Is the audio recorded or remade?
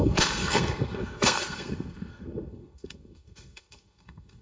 remade